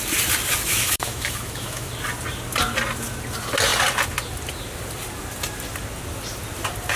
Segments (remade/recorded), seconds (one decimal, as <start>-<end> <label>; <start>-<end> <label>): 0.0-0.7 recorded; 0.7-1.9 remade; 1.9-7.0 recorded